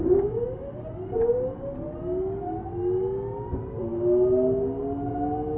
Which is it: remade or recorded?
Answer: recorded